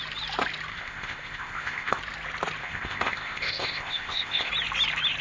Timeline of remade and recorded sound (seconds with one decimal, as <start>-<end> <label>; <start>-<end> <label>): 0.0-0.7 recorded; 0.7-2.0 remade; 2.0-2.6 recorded; 2.6-4.5 remade; 4.5-5.2 recorded